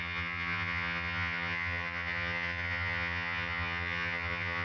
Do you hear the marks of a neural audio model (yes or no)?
yes